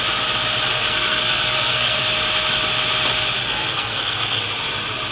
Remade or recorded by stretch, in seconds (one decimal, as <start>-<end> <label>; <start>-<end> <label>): 0.0-0.7 recorded; 0.7-2.0 remade; 2.0-3.4 recorded; 3.4-4.4 remade; 4.4-5.1 recorded